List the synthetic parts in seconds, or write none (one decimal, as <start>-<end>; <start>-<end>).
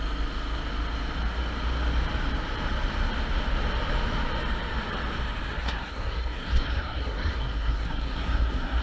5.5-8.8